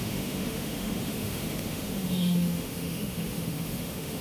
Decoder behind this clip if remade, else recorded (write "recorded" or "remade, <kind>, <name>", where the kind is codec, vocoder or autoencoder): remade, autoencoder, DAC-VAE